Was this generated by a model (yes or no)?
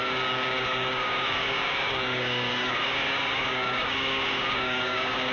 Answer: yes